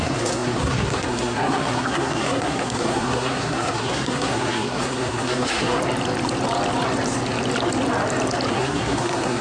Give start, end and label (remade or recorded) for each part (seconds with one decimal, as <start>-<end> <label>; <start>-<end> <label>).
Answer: 0.0-5.8 remade; 5.8-8.5 recorded; 8.5-9.4 remade